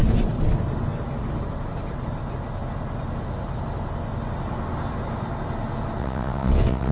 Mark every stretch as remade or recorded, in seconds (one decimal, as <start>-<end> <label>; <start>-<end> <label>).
0.0-6.0 recorded; 6.0-6.9 remade